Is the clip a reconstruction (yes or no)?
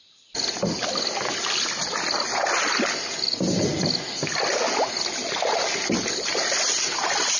no